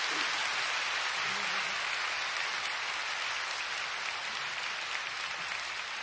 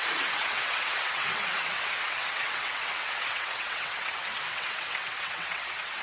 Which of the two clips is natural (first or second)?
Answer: first